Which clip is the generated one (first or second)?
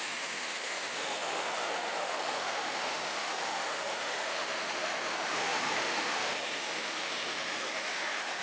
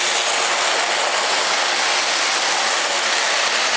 first